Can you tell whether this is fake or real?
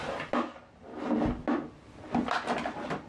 real